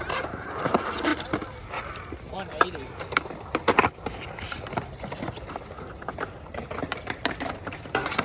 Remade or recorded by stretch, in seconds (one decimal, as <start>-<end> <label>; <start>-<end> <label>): 0.0-8.2 remade